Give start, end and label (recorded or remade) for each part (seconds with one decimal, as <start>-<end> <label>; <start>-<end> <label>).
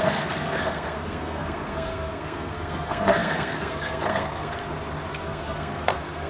0.0-4.6 remade; 4.6-5.1 recorded; 5.1-6.3 remade